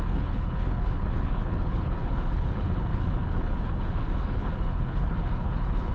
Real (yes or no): no